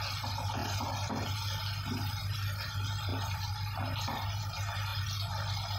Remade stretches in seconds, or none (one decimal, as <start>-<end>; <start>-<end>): none